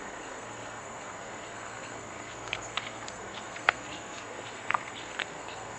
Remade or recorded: remade